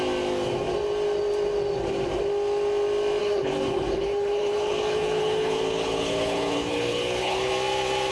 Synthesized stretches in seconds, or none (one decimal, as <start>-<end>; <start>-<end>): 3.2-7.5